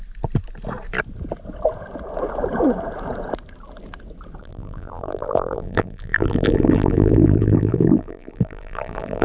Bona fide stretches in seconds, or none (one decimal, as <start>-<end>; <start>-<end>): 0.0-4.4